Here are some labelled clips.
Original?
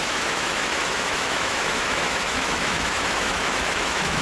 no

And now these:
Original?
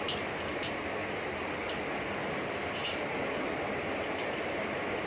yes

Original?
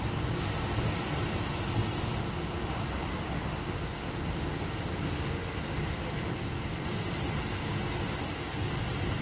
yes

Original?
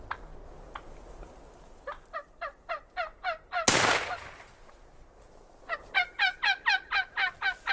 yes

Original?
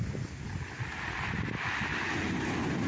yes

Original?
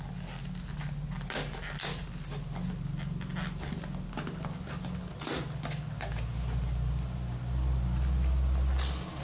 yes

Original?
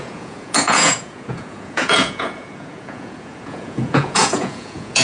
no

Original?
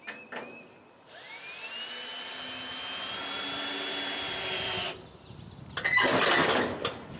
yes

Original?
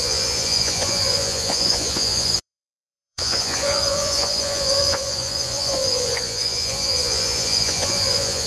no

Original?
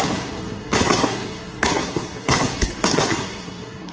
no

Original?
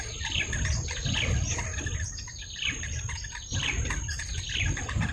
yes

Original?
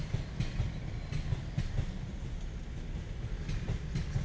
yes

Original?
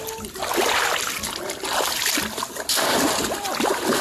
no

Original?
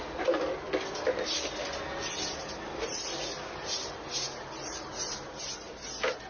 yes